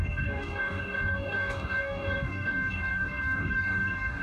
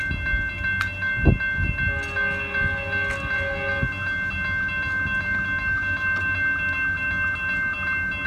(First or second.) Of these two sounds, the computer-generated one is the first